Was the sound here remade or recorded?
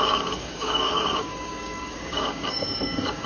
remade